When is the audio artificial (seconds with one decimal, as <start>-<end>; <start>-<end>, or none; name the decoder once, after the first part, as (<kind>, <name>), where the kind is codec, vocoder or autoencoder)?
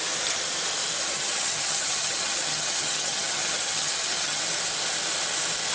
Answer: 1.0-4.4 (vocoder, HiFi-GAN)